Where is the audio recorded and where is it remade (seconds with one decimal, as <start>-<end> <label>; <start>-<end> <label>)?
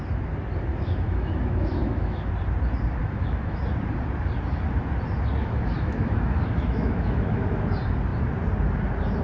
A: 0.0-0.7 recorded; 0.7-2.3 remade; 2.3-3.0 recorded; 3.0-3.6 remade; 3.6-5.4 recorded; 5.4-7.6 remade; 7.6-9.2 recorded